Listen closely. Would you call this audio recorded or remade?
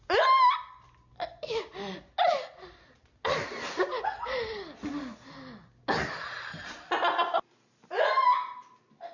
recorded